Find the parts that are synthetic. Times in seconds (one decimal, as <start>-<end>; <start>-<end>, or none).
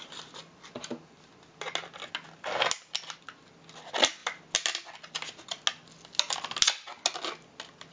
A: none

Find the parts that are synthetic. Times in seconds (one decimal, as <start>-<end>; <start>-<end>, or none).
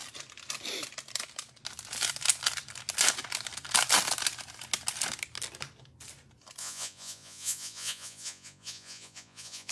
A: 6.6-9.7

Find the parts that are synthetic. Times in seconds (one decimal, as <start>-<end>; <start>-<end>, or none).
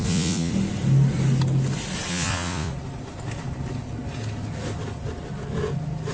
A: 0.0-0.5; 2.1-2.7